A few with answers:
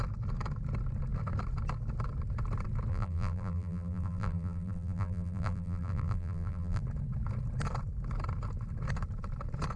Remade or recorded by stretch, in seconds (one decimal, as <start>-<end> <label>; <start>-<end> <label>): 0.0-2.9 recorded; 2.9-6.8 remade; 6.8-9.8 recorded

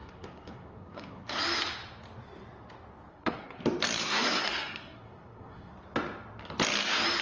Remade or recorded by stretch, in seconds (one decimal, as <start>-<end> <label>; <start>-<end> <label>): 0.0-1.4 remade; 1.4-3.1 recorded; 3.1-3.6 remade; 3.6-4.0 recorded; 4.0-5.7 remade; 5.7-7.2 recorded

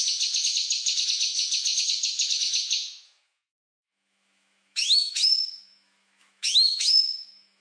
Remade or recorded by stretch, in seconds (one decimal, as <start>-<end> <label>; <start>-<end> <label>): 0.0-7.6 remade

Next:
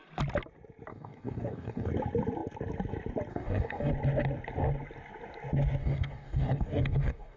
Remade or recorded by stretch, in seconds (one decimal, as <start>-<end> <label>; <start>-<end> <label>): 0.0-0.9 recorded; 0.9-1.9 remade; 1.9-3.3 recorded; 3.3-3.9 remade; 3.9-5.8 recorded; 5.8-7.4 remade